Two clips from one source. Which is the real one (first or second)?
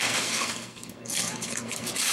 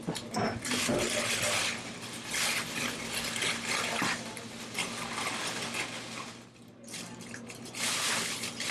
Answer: second